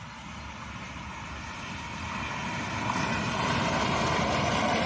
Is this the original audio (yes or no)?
yes